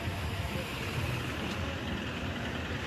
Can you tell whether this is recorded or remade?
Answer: remade